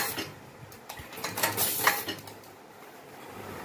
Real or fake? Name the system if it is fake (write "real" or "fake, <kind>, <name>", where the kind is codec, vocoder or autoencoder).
real